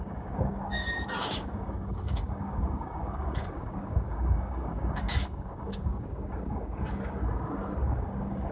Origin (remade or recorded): remade